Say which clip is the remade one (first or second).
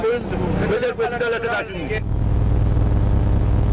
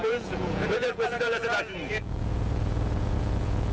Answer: second